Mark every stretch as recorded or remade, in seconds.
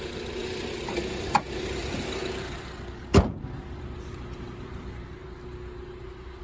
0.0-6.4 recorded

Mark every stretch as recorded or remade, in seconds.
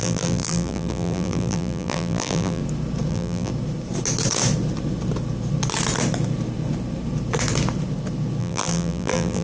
0.0-2.6 remade; 2.6-3.1 recorded; 3.1-3.5 remade; 3.5-8.4 recorded; 8.4-9.4 remade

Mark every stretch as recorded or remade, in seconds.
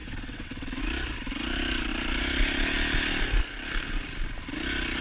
0.0-0.8 remade; 0.8-5.0 recorded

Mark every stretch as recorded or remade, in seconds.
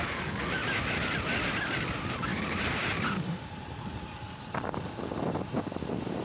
0.0-6.2 recorded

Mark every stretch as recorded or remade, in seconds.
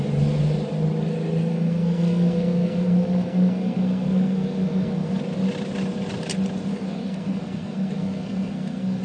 0.0-1.5 recorded; 1.5-5.2 remade; 5.2-6.7 recorded; 6.7-9.0 remade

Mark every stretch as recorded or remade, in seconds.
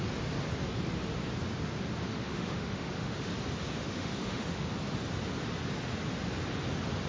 0.0-2.0 recorded; 2.0-3.3 remade; 3.3-3.8 recorded; 3.8-4.7 remade; 4.7-7.1 recorded